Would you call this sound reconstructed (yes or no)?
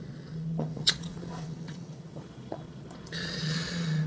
yes